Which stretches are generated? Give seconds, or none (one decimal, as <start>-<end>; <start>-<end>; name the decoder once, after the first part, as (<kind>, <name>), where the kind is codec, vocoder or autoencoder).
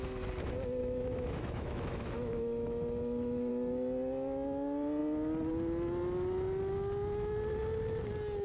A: 0.8-3.5 (autoencoder, DAC-VAE)